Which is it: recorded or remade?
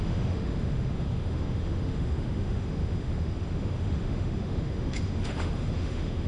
remade